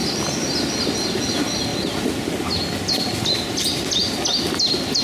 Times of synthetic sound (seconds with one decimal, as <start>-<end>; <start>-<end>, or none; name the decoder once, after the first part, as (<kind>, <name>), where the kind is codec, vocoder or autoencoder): none